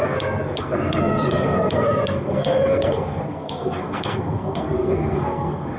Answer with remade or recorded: remade